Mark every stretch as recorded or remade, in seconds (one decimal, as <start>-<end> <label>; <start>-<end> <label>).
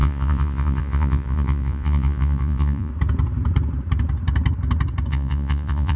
0.0-2.9 remade; 2.9-5.1 recorded; 5.1-6.0 remade